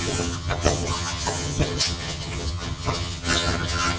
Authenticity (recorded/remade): remade